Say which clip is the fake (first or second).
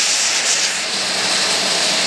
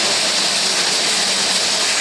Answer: first